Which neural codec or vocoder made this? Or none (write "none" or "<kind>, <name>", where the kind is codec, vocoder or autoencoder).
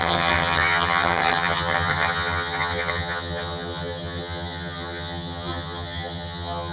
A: vocoder, HiFi-GAN